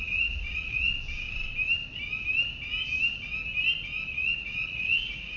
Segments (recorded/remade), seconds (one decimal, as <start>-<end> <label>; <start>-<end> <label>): 0.0-0.9 remade; 0.9-4.1 recorded; 4.1-5.4 remade

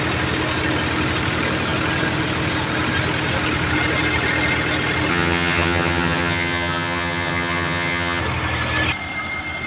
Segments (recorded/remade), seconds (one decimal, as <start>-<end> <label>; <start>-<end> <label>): 0.0-5.1 recorded; 5.1-8.2 remade; 8.2-9.7 recorded

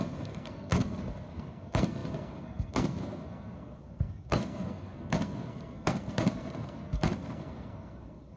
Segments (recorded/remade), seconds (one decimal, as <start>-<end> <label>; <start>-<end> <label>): 0.0-8.4 remade

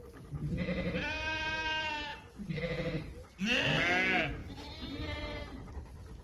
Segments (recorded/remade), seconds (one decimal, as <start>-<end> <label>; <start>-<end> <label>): 0.0-6.2 recorded

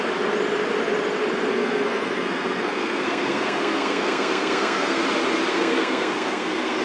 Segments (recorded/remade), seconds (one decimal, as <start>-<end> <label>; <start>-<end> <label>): 0.0-1.5 recorded; 1.5-5.0 remade; 5.0-5.5 recorded; 5.5-6.8 remade

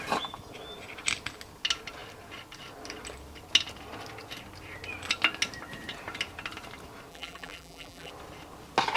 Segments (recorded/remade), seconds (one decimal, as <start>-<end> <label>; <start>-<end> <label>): 0.0-7.1 recorded; 7.1-8.1 remade; 8.1-9.0 recorded

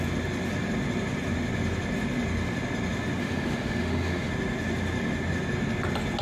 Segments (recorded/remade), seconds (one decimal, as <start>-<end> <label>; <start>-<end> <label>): 0.0-3.2 recorded; 3.2-4.3 remade; 4.3-6.2 recorded

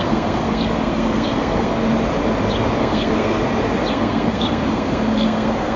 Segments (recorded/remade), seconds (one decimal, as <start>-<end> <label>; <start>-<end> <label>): 0.0-1.7 remade; 1.7-2.8 recorded; 2.8-3.4 remade; 3.4-3.9 recorded; 3.9-5.8 remade